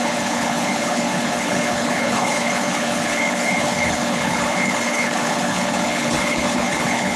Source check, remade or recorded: remade